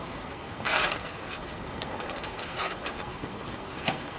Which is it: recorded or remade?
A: remade